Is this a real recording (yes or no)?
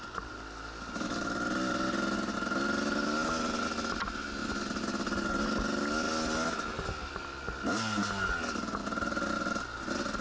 yes